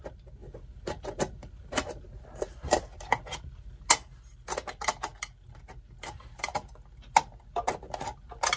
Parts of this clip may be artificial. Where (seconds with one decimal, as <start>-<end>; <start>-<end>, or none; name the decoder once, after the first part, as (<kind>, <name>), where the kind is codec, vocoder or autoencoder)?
none